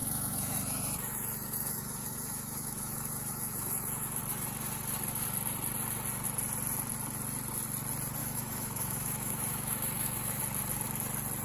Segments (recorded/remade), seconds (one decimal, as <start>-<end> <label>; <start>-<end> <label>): 0.0-4.2 remade; 4.2-8.2 recorded; 8.2-10.4 remade; 10.4-11.4 recorded

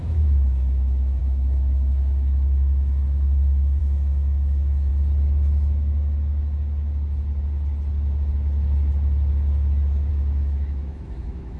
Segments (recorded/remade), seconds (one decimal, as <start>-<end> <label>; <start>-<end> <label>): 0.0-4.9 remade; 4.9-10.1 recorded; 10.1-11.6 remade

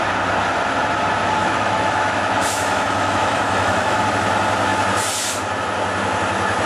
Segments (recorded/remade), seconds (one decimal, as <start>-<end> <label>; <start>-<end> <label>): 0.0-1.4 recorded; 1.4-4.0 remade; 4.0-6.7 recorded

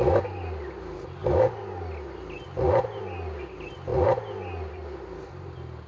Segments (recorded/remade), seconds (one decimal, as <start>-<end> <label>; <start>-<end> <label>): 0.0-5.9 recorded

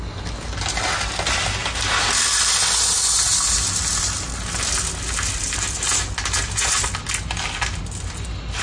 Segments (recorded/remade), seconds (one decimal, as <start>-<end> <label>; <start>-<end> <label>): 0.0-8.6 recorded

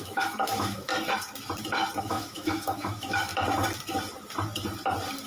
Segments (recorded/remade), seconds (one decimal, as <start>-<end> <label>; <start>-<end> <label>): 0.0-0.9 remade; 0.9-2.0 recorded; 2.0-3.3 remade; 3.3-5.3 recorded